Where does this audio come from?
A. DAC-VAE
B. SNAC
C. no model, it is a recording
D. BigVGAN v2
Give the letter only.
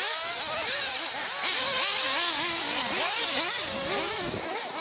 C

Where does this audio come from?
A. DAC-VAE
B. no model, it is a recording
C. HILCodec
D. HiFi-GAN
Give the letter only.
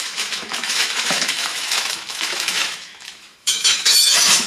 A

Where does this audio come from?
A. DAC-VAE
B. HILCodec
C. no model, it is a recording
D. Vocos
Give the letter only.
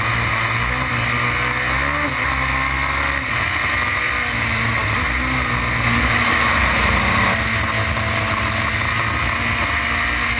C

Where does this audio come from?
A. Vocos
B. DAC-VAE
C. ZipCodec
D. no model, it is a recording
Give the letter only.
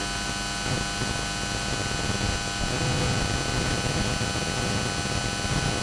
D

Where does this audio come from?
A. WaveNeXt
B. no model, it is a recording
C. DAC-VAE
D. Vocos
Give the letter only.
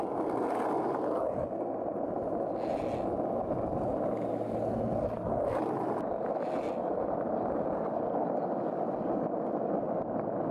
B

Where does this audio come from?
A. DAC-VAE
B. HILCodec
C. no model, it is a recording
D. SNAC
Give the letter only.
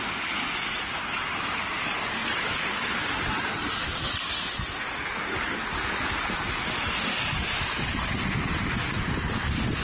C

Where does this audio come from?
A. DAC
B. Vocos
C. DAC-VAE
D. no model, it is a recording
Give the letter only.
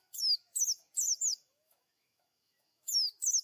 C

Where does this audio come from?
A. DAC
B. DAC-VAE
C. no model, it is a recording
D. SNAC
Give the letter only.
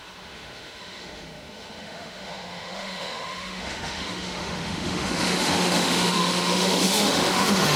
B